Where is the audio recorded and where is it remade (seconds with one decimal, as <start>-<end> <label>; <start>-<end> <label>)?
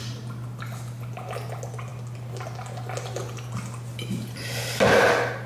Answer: 0.0-5.5 recorded